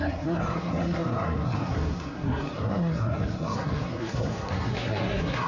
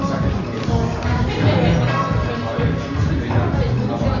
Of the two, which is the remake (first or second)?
first